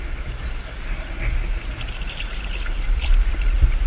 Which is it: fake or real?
real